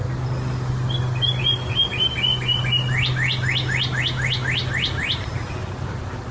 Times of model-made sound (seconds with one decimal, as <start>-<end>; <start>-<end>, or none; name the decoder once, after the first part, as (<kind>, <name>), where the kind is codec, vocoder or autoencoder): none